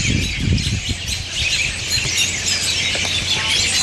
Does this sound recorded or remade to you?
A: recorded